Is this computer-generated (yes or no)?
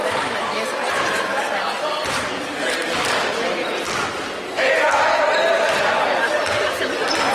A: no